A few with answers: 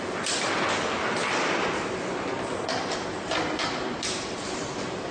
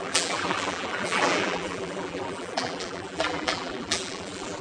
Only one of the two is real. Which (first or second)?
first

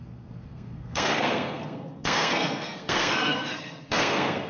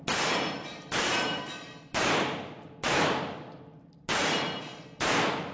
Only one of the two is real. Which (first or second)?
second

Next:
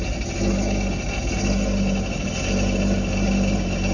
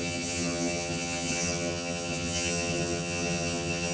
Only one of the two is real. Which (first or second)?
first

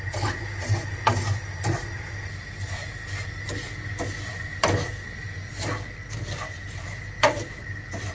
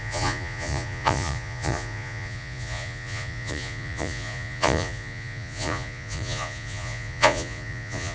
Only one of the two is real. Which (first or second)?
first